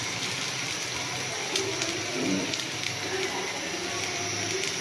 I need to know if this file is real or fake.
real